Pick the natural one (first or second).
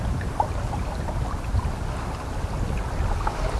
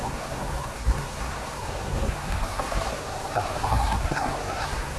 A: first